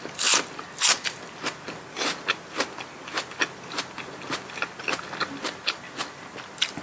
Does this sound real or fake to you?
real